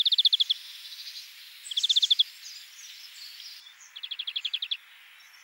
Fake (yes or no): no